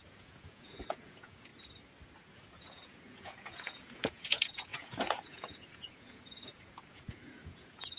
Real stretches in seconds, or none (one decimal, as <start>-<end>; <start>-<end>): 1.5-2.3